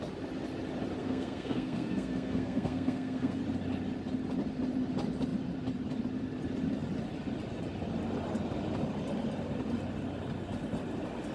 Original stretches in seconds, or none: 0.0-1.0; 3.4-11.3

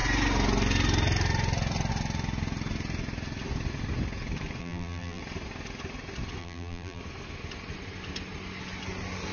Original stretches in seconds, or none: 0.0-4.6; 5.2-6.4; 7.0-9.3